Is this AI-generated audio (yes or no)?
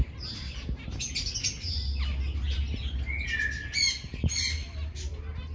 no